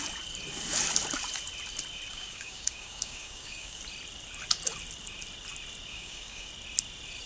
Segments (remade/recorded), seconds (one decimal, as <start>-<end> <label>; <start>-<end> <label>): 0.0-2.1 recorded; 2.1-3.8 remade; 3.8-5.9 recorded; 5.9-6.5 remade; 6.5-7.3 recorded